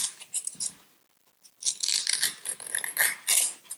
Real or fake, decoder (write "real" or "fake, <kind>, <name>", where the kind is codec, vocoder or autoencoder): real